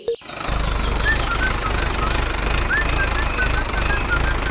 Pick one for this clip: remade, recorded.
recorded